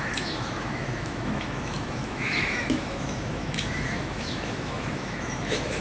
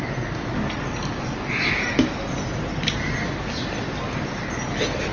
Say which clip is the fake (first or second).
first